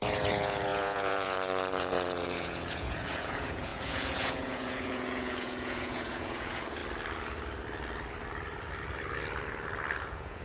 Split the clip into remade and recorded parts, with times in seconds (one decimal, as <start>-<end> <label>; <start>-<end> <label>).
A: 0.0-6.8 remade; 6.8-10.0 recorded; 10.0-10.4 remade